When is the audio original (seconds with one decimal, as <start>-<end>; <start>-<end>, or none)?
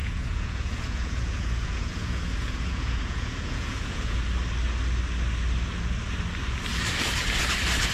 4.2-7.9